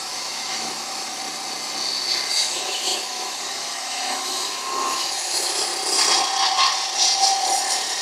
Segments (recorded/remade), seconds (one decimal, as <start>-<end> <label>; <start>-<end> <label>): 0.0-1.2 remade; 1.2-2.3 recorded; 2.3-5.7 remade; 5.7-8.0 recorded